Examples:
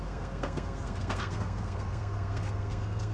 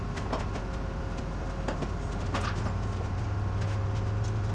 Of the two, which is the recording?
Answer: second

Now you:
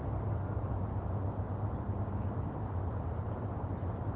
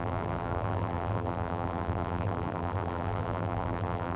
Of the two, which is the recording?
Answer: first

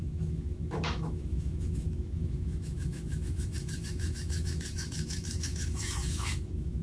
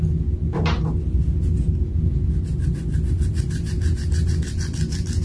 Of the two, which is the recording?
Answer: second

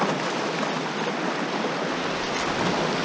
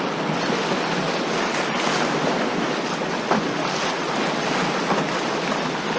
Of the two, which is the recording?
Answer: first